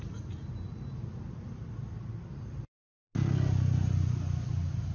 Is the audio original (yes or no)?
yes